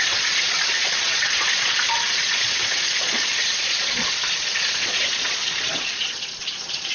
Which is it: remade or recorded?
remade